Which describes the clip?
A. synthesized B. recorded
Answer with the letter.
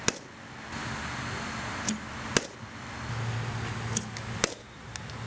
B